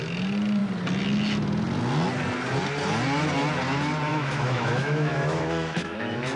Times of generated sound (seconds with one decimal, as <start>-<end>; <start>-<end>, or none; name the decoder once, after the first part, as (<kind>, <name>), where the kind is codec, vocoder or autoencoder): 4.1-6.4 (autoencoder, DAC-VAE)